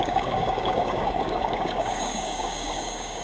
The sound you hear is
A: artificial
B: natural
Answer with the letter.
A